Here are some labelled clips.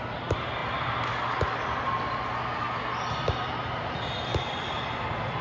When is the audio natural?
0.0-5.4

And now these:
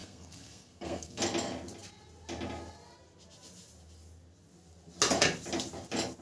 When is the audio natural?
1.2-6.2

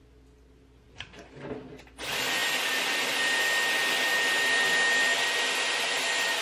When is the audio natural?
0.0-6.4

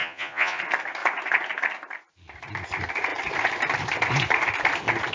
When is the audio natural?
0.6-5.1

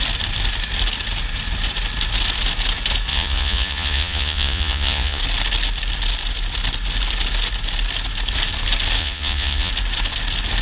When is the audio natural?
0.0-3.1; 5.2-9.0; 9.7-10.6

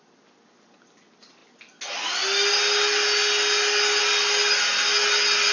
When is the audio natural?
0.0-5.5

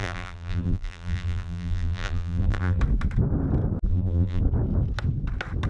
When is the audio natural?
2.8-3.9; 4.4-5.7

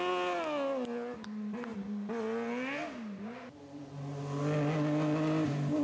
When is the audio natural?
0.0-5.8